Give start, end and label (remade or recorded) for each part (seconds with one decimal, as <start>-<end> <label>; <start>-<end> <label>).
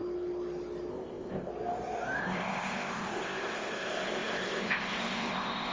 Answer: 0.0-0.9 recorded; 0.9-1.5 remade; 1.5-2.2 recorded; 2.2-5.7 remade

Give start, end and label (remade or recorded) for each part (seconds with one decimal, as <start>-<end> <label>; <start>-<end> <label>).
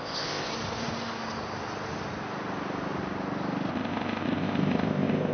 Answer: 0.0-0.5 remade; 0.5-3.7 recorded; 3.7-5.3 remade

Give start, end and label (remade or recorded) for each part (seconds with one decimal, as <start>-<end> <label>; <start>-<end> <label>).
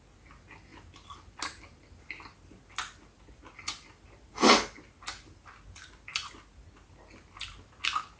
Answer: 0.0-8.2 recorded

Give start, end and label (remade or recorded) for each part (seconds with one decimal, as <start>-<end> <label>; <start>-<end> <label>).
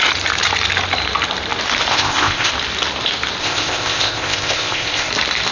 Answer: 0.0-1.9 recorded; 1.9-2.5 remade; 2.5-3.4 recorded; 3.4-5.1 remade; 5.1-5.5 recorded